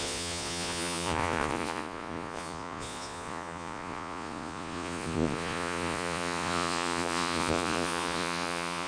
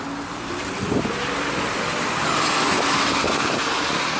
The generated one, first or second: first